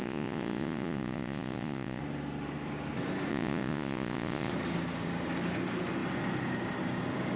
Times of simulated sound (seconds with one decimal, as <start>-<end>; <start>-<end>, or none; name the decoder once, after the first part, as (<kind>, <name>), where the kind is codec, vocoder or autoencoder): 0.0-2.0 (vocoder, Vocos); 3.3-4.5